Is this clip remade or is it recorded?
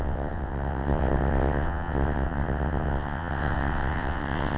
remade